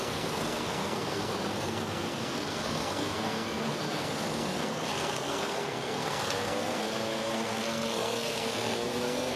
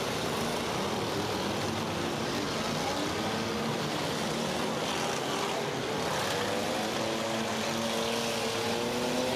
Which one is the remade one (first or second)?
first